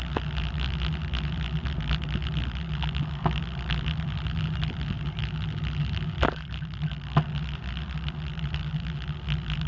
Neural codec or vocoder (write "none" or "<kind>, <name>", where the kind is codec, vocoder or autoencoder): none